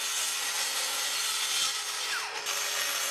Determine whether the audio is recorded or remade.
recorded